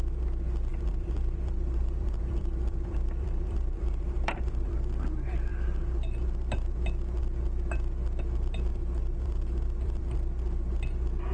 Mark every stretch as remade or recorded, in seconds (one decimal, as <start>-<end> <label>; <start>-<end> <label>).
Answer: 0.0-0.7 recorded; 0.7-4.7 remade; 4.7-8.7 recorded; 8.7-10.0 remade; 10.0-11.3 recorded